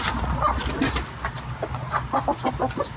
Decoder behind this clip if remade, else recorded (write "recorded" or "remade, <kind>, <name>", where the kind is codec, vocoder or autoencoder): recorded